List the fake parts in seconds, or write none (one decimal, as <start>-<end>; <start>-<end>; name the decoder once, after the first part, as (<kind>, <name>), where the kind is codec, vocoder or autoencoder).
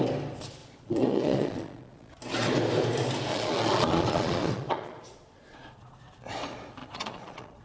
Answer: 0.6-2.1 (vocoder, Vocos); 3.3-6.0; 6.8-7.6